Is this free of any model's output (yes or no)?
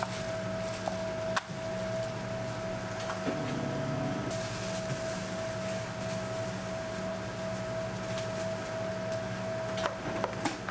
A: yes